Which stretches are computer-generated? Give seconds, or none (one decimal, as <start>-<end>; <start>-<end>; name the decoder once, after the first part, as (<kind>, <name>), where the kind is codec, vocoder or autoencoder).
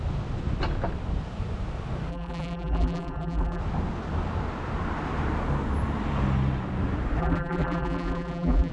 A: 2.1-3.6 (vocoder, BigVGAN v2); 7.2-8.7